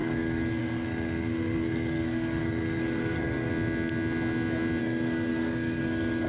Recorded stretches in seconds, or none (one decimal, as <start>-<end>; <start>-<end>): 3.5-4.8